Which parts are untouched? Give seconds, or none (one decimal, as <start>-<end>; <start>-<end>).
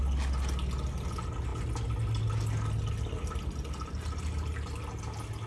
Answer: 0.0-5.5